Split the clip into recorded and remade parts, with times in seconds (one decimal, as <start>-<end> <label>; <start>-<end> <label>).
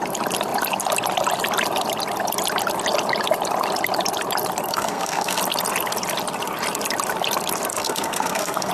0.0-4.7 recorded; 4.7-5.4 remade; 5.4-7.7 recorded; 7.7-8.7 remade